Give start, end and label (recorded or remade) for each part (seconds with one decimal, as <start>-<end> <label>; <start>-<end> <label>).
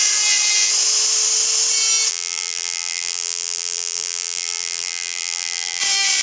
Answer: 0.0-2.1 recorded; 2.1-5.8 remade; 5.8-6.2 recorded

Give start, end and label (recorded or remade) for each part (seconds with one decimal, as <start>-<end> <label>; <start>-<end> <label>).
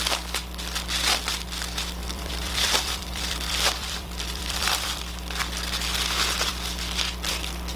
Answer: 0.0-2.0 recorded; 2.0-5.1 remade; 5.1-7.8 recorded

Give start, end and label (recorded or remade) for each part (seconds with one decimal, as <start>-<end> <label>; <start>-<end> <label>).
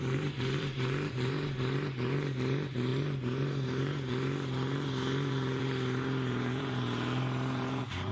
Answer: 0.0-8.1 remade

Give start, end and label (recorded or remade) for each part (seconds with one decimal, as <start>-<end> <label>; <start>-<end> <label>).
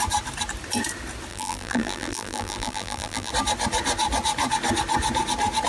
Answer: 0.0-1.3 recorded; 1.3-3.3 remade; 3.3-5.7 recorded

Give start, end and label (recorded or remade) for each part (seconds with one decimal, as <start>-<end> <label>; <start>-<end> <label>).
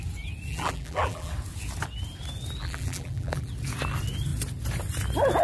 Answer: 0.0-0.5 recorded; 0.5-1.3 remade; 1.3-2.6 recorded; 2.6-3.5 remade; 3.5-5.4 recorded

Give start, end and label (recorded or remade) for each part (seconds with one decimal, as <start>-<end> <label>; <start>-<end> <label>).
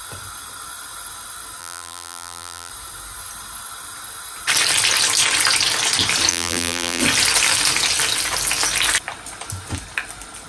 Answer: 0.0-1.6 recorded; 1.6-2.7 remade; 2.7-6.3 recorded; 6.3-7.0 remade; 7.0-10.5 recorded